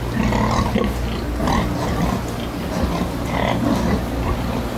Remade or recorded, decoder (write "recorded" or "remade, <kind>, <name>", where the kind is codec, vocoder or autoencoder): recorded